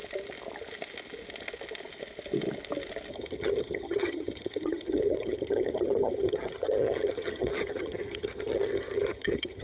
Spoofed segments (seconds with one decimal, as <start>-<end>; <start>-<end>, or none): 3.1-9.6